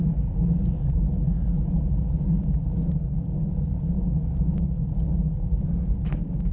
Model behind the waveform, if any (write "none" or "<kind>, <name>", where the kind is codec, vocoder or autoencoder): none